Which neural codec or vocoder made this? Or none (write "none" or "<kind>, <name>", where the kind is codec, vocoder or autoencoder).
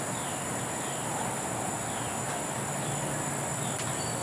none